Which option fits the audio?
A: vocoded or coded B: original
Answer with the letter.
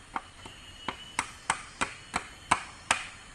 B